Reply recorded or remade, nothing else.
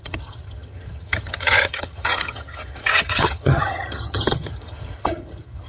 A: remade